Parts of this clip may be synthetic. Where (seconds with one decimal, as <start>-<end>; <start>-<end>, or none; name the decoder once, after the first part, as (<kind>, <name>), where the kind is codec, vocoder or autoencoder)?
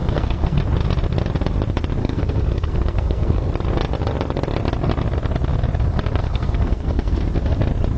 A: 0.0-0.6 (codec, SNAC); 2.0-3.5; 6.2-7.2